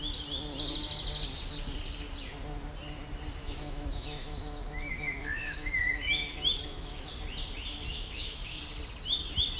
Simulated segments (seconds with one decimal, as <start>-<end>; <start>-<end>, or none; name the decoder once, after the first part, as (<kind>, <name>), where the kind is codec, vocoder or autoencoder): 3.4-7.1 (autoencoder, DAC-VAE); 7.9-8.6